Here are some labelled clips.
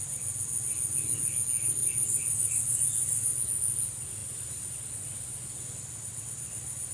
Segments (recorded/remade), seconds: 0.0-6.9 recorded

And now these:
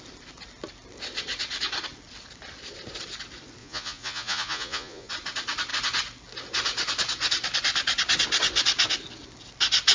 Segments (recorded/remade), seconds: 0.0-3.6 recorded; 3.6-5.1 remade; 5.1-9.9 recorded

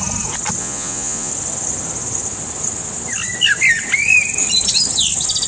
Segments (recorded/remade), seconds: 0.0-0.6 recorded; 0.6-1.3 remade; 1.3-5.5 recorded

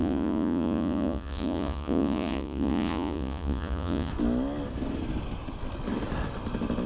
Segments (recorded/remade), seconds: 0.0-4.1 remade; 4.1-6.9 recorded

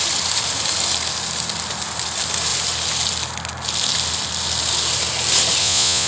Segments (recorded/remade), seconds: 0.0-5.6 recorded; 5.6-6.1 remade